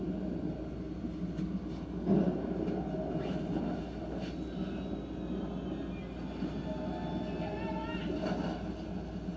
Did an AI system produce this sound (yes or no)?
no